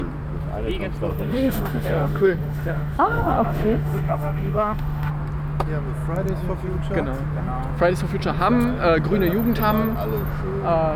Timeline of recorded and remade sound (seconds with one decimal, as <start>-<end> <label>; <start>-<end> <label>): 0.0-1.1 recorded; 1.1-5.1 remade; 5.1-11.0 recorded